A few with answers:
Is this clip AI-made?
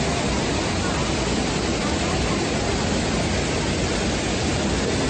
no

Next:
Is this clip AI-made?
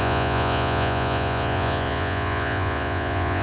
yes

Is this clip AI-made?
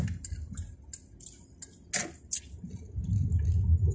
no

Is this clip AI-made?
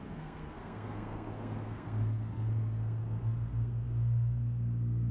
yes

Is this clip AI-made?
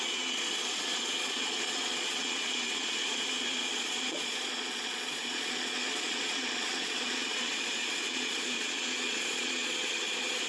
yes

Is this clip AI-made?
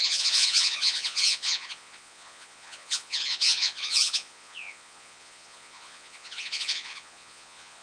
yes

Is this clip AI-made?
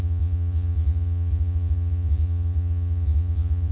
yes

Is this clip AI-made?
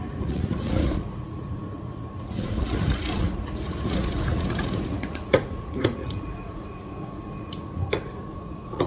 yes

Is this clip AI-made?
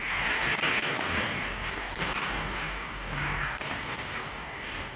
yes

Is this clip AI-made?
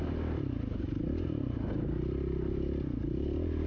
no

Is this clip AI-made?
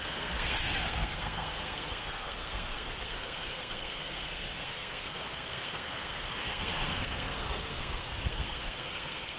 yes